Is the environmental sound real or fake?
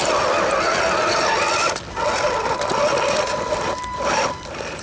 real